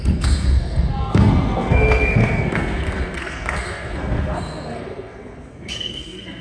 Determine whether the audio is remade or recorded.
remade